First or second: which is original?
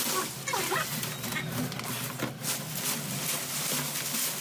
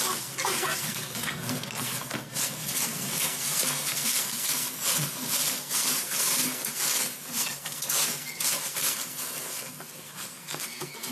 first